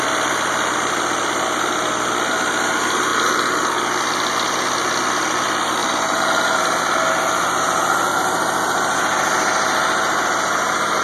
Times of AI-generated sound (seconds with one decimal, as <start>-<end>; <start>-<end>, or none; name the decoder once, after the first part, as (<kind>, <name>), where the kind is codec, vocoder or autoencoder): 5.8-6.6 (vocoder, BigVGAN v2)

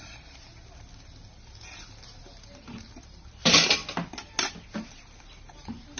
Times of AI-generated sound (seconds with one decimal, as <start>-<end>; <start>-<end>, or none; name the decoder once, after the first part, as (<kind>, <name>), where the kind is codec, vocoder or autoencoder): 0.0-0.5 (vocoder, BigVGAN v2); 2.2-3.8; 4.9-6.0

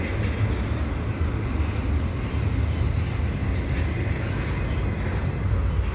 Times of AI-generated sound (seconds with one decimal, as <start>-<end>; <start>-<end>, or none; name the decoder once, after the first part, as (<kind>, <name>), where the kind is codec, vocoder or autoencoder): none